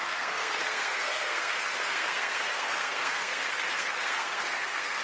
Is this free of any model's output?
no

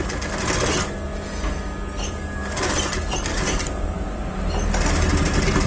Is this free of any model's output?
yes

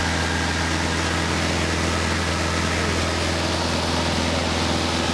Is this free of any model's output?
yes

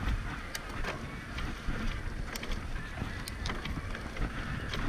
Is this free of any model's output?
yes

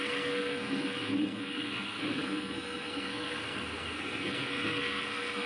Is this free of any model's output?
no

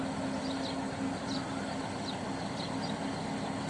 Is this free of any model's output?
yes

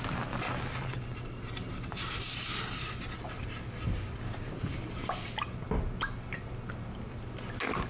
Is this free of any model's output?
yes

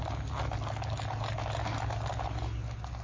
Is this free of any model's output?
yes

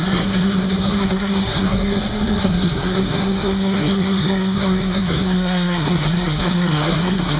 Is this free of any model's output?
no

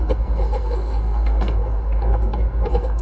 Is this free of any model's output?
no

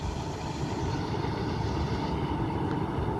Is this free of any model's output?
yes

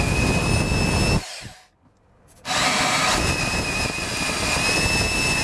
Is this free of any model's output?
yes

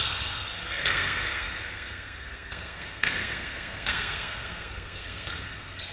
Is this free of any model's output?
no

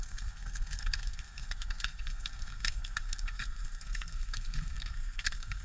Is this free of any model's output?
no